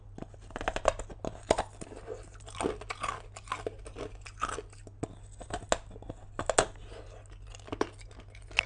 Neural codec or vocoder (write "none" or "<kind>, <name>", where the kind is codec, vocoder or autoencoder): none